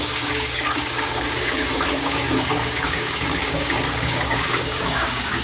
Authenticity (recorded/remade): remade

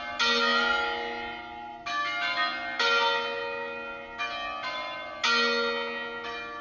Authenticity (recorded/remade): recorded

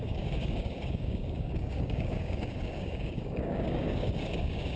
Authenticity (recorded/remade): remade